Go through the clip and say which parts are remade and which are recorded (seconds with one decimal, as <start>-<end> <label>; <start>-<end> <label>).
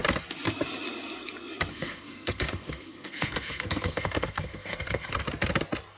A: 0.0-1.7 recorded; 1.7-5.2 remade; 5.2-6.0 recorded